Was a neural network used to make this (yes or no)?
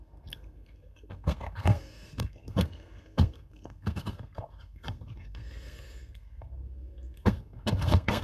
yes